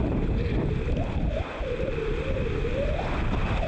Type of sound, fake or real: real